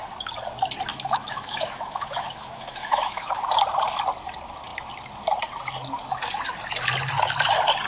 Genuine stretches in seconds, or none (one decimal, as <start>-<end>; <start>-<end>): 0.0-0.9; 3.4-7.9